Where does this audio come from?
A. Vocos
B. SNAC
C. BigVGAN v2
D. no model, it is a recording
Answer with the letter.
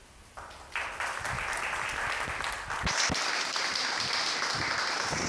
C